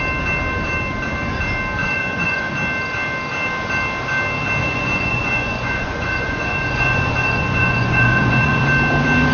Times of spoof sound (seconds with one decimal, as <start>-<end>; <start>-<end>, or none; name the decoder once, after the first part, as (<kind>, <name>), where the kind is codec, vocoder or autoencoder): 1.8-2.5 (vocoder, Vocos); 4.6-8.6